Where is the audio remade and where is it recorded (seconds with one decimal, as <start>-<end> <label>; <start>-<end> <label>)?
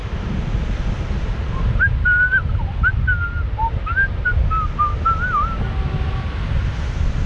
0.0-7.3 recorded